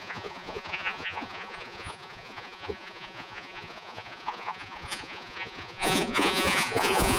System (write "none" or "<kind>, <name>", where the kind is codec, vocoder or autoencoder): vocoder, Vocos